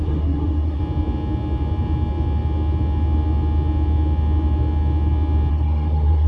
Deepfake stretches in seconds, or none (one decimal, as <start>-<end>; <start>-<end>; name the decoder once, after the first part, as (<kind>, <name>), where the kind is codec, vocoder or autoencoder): 0.0-0.8 (codec, SNAC); 5.5-6.3